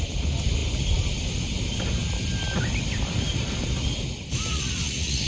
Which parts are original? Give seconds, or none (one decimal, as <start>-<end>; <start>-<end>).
0.0-4.5